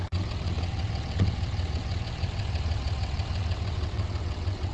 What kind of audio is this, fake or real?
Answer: fake